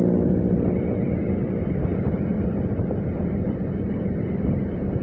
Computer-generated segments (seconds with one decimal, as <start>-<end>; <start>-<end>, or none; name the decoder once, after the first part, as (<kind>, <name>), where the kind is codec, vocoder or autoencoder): none